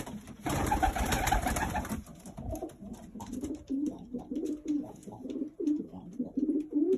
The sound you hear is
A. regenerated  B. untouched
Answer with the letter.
A